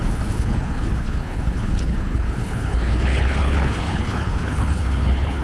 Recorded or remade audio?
remade